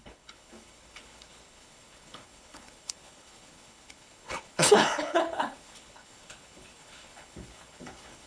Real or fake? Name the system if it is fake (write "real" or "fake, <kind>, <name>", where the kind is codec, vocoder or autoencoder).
fake, codec, HILCodec